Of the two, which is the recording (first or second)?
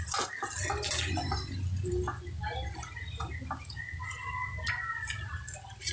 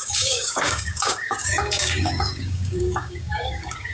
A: first